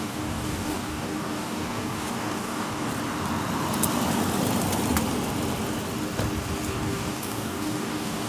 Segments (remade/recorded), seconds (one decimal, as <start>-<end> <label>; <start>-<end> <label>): 0.0-2.9 remade; 2.9-6.7 recorded; 6.7-8.3 remade